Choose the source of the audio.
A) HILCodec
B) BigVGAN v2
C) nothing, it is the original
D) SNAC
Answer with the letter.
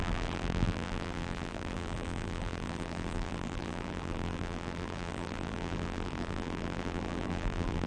B